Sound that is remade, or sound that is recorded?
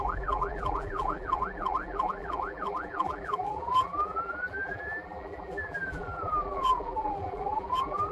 remade